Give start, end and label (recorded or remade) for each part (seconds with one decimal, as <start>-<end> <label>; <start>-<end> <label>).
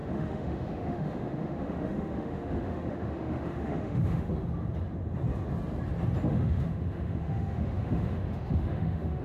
0.0-4.3 remade; 4.3-6.3 recorded; 6.3-9.2 remade